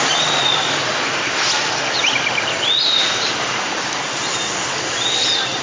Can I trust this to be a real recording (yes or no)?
yes